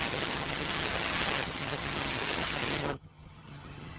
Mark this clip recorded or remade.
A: remade